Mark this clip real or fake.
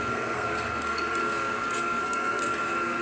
fake